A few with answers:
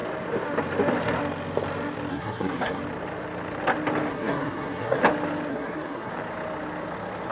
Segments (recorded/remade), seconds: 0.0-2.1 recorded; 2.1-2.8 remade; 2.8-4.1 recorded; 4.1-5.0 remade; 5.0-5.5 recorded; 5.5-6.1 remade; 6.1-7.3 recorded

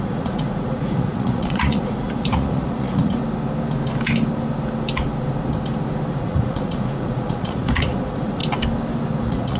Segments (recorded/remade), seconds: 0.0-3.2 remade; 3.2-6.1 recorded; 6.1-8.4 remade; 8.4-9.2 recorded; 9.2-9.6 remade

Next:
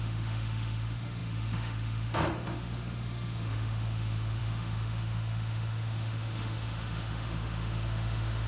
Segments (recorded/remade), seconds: 0.0-8.5 remade

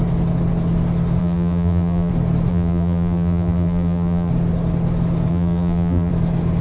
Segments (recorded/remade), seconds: 0.0-1.2 recorded; 1.2-2.1 remade; 2.1-2.5 recorded; 2.5-4.3 remade; 4.3-5.3 recorded; 5.3-6.1 remade; 6.1-6.6 recorded

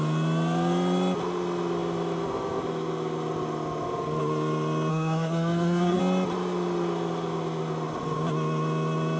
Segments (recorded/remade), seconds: 0.0-4.9 recorded; 4.9-6.0 remade; 6.0-9.2 recorded

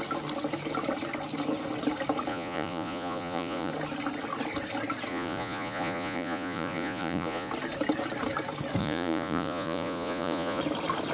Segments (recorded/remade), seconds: 0.0-2.3 recorded; 2.3-3.7 remade; 3.7-5.1 recorded; 5.1-7.5 remade; 7.5-8.8 recorded; 8.8-10.6 remade; 10.6-11.1 recorded

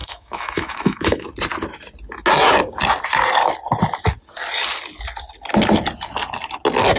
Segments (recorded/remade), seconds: 0.0-1.3 remade; 1.3-7.0 recorded